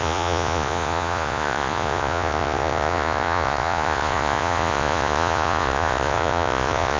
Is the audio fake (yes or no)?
yes